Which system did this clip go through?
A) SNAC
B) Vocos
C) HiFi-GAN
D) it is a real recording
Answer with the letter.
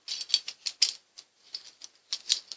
D